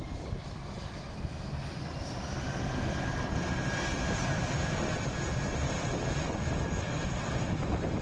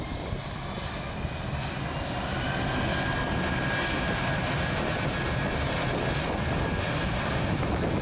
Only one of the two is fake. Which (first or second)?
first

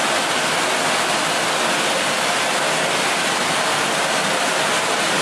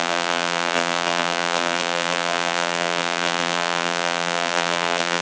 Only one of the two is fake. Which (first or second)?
second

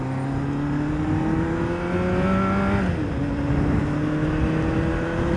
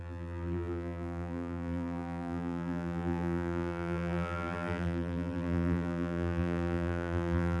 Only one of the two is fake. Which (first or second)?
second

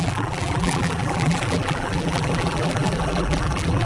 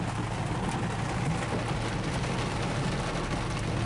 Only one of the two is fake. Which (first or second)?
first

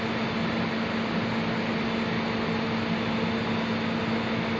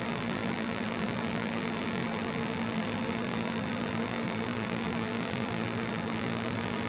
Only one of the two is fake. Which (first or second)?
second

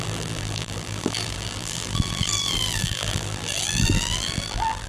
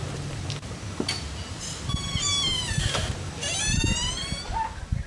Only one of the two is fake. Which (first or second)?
first